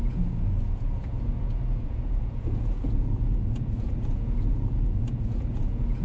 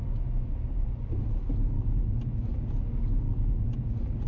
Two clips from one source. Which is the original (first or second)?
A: second